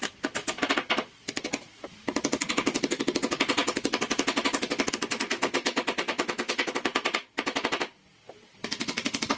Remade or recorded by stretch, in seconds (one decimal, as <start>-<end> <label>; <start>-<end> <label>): 0.0-9.4 recorded